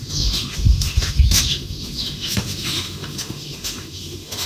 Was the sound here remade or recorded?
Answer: remade